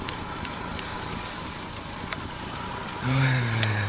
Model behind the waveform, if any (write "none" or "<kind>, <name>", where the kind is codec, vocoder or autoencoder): vocoder, BigVGAN v2